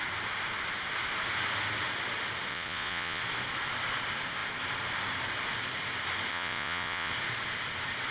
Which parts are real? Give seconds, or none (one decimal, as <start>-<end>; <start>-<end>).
0.0-2.5; 3.2-6.3; 7.1-8.1